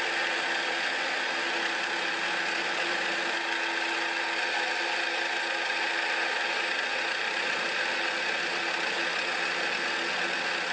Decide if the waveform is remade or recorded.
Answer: recorded